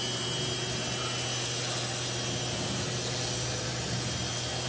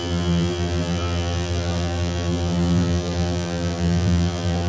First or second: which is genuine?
first